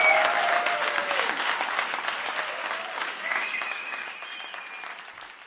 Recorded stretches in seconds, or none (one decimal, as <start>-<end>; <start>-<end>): 0.0-0.8; 1.5-2.6; 4.2-5.5